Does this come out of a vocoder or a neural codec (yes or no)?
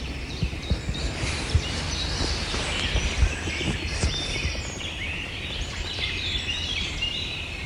yes